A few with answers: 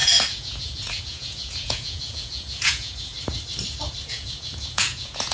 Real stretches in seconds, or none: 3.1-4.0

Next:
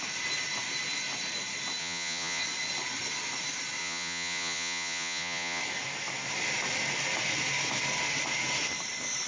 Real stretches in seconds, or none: 0.0-1.8; 2.4-3.8; 5.6-9.3

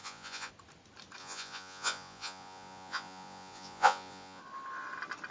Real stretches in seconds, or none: 0.5-1.2; 4.4-5.3

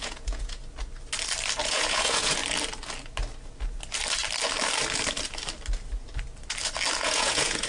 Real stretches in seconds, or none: 0.6-1.6; 2.4-7.0

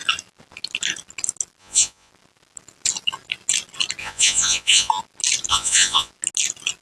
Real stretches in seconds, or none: 0.0-1.6; 2.1-4.0; 4.9-5.5; 6.1-6.8

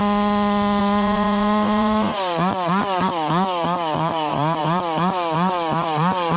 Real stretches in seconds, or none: 0.0-0.8